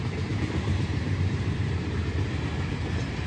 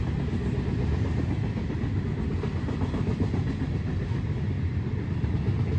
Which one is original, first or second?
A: second